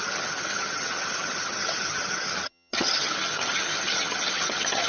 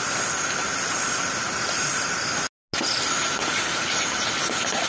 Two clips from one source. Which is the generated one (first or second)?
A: first